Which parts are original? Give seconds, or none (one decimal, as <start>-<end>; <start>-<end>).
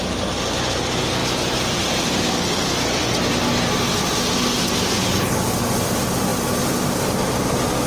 0.0-7.9